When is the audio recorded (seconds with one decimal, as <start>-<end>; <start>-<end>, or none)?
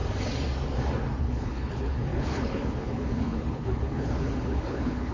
0.0-1.2